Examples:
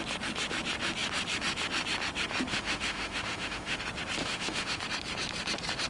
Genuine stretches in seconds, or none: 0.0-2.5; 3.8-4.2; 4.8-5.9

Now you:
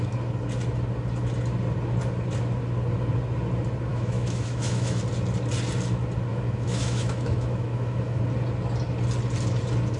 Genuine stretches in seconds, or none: 0.0-3.9; 5.0-6.3; 8.2-10.0

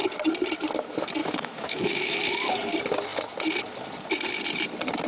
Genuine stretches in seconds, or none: 0.0-1.2; 2.5-5.1

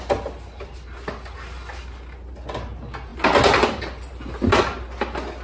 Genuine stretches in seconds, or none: 0.0-5.4

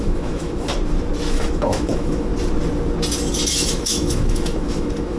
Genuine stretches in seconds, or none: 0.7-1.3; 2.3-3.5